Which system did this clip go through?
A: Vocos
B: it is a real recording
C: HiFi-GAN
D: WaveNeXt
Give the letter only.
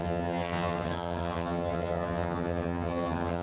C